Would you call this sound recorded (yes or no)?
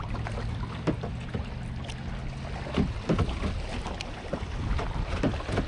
yes